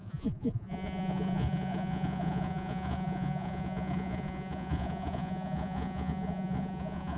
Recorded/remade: remade